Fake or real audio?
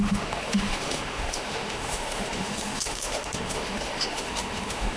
fake